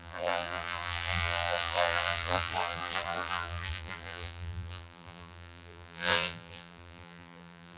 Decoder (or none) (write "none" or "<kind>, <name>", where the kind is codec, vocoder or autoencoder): vocoder, BigVGAN v2